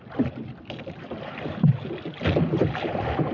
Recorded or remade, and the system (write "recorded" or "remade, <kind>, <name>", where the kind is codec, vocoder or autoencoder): recorded